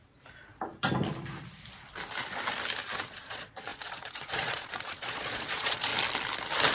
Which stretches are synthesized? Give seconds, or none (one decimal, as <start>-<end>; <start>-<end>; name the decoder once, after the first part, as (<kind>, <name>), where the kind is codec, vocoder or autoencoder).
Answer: 3.1-5.9 (vocoder, Vocos)